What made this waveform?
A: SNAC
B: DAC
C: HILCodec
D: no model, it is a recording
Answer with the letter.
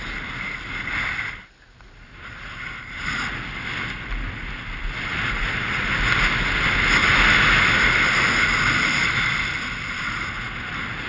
D